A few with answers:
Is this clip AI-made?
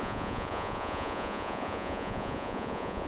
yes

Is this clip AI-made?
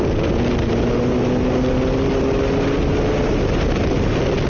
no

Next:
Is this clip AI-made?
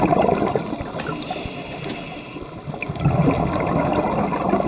no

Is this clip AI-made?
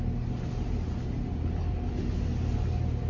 no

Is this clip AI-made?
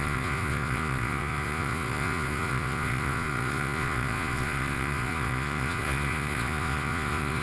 yes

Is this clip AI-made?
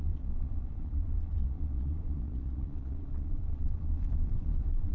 yes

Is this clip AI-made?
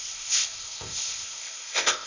yes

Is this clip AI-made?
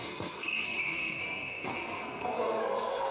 yes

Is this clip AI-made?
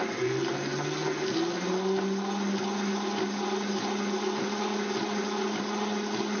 no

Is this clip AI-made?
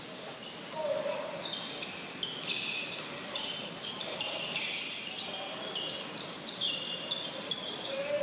no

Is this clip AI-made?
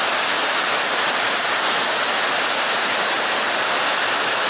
no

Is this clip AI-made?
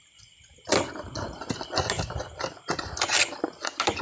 no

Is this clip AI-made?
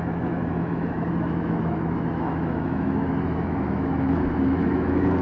yes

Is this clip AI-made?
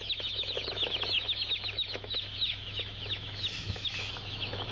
yes